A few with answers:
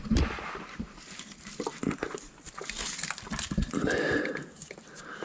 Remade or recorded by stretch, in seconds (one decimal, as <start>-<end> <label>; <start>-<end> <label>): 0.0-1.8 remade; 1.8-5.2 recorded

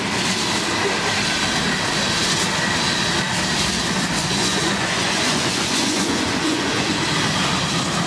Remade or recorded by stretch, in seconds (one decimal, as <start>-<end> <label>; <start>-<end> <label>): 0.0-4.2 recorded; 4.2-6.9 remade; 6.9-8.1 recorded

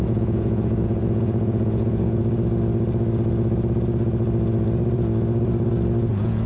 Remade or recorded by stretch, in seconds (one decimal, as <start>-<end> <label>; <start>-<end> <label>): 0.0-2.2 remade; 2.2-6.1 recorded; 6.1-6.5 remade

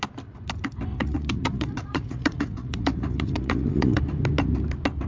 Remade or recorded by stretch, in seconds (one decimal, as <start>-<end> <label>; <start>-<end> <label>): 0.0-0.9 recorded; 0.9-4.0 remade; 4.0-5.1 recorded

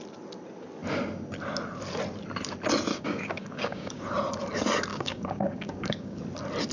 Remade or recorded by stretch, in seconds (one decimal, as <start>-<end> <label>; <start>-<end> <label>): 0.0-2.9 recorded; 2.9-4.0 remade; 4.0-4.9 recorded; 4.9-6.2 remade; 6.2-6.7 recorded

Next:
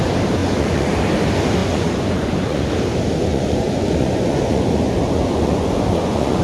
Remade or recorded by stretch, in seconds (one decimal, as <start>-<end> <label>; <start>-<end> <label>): 0.0-0.4 recorded; 0.4-0.9 remade; 0.9-1.6 recorded; 1.6-2.7 remade; 2.7-3.3 recorded; 3.3-6.4 remade

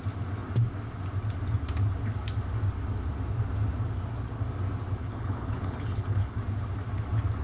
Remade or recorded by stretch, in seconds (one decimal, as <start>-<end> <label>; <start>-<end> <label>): 0.0-5.0 recorded; 5.0-6.4 remade; 6.4-7.4 recorded